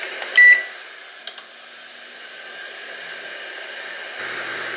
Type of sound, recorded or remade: recorded